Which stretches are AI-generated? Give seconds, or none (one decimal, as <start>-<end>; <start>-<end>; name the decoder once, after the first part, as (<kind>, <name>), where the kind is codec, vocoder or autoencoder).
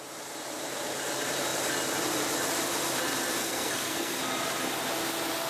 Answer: 3.4-4.2 (codec, SNAC)